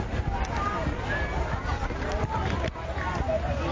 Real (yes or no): yes